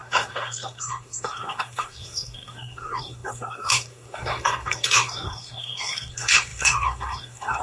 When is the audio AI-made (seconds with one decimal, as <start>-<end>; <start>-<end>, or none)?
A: 0.0-7.6